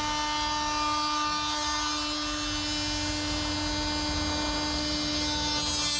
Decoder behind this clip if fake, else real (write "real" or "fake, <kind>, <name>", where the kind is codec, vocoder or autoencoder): real